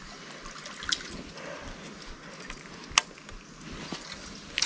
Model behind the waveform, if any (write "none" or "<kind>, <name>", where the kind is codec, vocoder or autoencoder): none